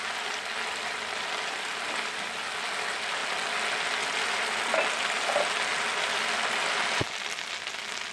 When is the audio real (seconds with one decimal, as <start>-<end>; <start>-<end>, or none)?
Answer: 0.0-8.1